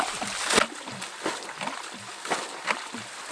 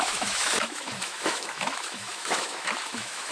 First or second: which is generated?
second